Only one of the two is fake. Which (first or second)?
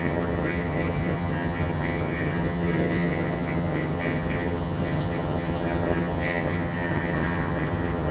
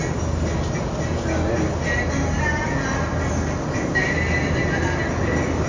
first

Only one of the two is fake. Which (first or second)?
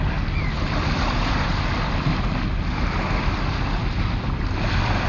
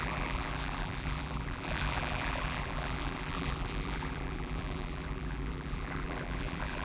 second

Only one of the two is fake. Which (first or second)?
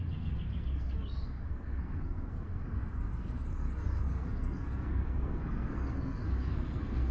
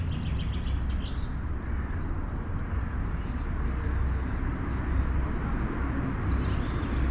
first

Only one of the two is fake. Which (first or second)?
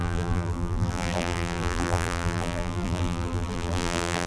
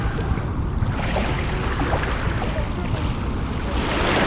first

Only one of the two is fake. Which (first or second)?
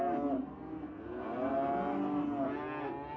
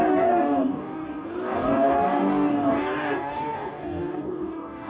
second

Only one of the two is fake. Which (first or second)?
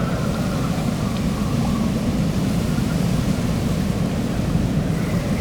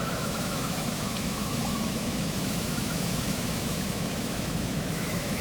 second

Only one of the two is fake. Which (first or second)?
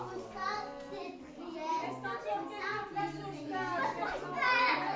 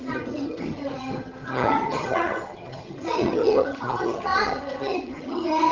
second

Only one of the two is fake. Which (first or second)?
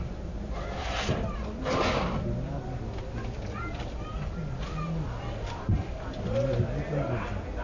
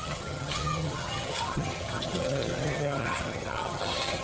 second